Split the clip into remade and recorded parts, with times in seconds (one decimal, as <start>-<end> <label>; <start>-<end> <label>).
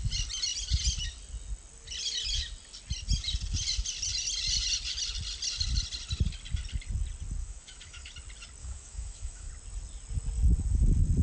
0.0-7.4 recorded; 7.4-8.1 remade; 8.1-8.6 recorded; 8.6-9.5 remade; 9.5-11.2 recorded